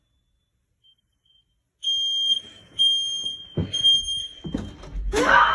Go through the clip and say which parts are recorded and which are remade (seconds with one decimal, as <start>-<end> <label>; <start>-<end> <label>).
0.0-2.3 recorded; 2.3-2.8 remade; 2.8-5.5 recorded